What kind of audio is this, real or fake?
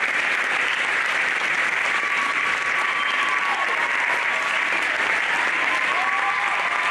real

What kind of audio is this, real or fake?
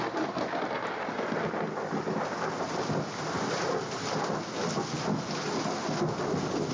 real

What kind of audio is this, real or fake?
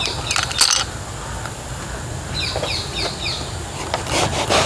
real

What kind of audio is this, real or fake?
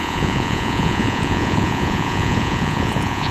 fake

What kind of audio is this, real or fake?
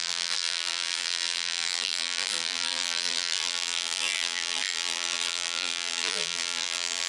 fake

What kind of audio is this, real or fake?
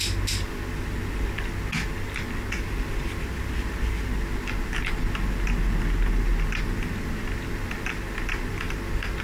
real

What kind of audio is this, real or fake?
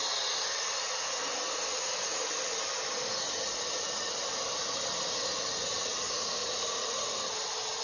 real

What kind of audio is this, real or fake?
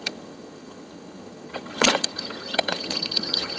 fake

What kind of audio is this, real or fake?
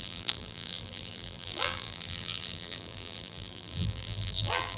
fake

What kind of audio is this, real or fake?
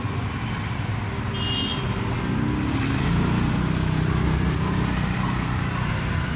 real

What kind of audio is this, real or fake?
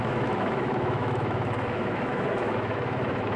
fake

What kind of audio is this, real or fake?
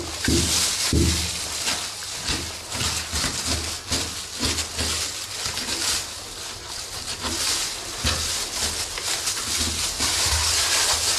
real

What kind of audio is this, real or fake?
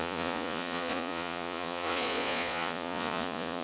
fake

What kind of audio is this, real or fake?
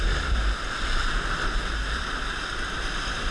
real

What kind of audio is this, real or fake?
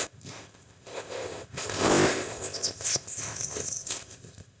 fake